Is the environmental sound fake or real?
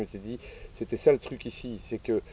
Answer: real